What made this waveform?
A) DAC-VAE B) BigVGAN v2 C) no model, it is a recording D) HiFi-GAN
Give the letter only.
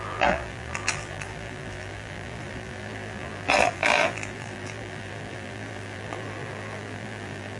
B